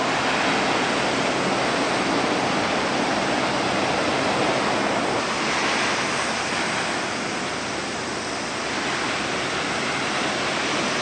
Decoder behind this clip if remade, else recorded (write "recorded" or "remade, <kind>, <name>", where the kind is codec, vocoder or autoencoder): recorded